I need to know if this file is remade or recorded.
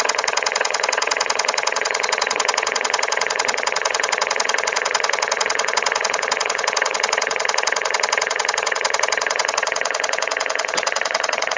remade